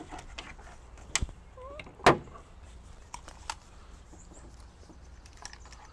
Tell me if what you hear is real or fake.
real